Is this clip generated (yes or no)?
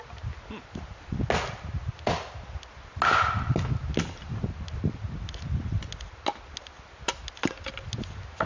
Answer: no